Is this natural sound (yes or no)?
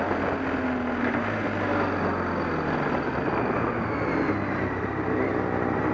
yes